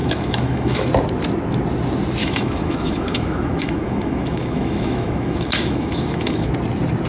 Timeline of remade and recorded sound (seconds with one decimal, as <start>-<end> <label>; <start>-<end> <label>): 0.0-0.9 remade; 0.9-2.2 recorded; 2.2-6.5 remade; 6.5-7.1 recorded